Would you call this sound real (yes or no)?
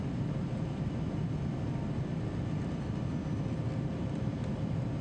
no